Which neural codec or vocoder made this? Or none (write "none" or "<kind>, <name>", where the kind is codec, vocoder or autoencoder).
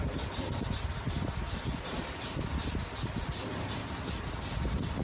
none